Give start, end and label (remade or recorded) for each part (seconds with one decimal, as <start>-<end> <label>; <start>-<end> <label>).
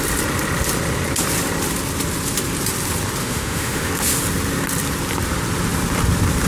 0.0-3.2 recorded; 3.2-3.9 remade; 3.9-6.5 recorded